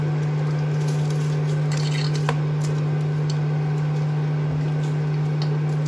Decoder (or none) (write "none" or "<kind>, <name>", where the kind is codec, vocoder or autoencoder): none